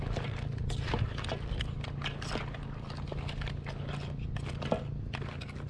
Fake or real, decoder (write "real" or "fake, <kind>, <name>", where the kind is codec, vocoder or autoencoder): real